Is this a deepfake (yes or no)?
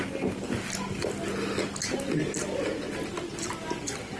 no